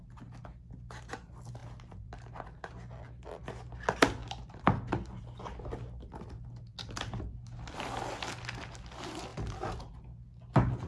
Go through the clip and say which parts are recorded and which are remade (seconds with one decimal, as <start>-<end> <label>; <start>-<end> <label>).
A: 0.0-10.9 recorded